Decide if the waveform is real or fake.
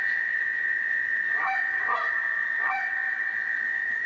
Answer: fake